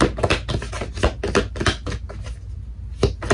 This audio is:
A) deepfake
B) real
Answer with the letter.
B